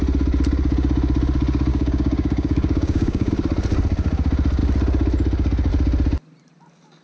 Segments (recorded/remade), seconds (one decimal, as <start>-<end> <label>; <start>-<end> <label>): 0.0-1.7 recorded; 1.7-3.3 remade; 3.3-7.0 recorded